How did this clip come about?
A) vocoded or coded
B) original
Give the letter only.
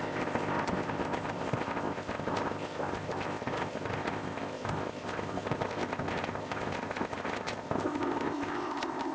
A